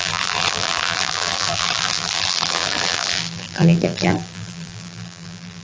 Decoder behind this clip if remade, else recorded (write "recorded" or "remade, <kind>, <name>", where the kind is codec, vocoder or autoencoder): remade, vocoder, BigVGAN v2